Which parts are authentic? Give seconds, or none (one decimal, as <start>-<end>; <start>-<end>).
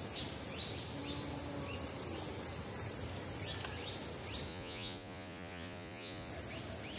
0.0-4.5; 6.3-7.0